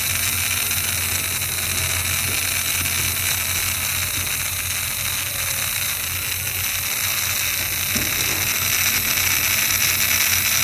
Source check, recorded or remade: recorded